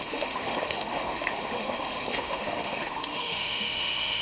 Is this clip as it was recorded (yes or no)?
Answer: no